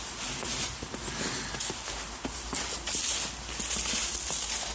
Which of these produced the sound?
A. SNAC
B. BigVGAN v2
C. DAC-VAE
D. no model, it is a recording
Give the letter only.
D